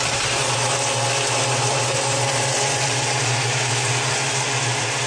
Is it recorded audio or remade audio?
recorded